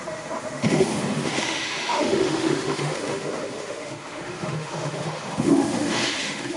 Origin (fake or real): fake